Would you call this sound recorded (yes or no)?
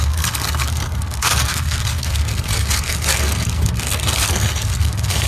no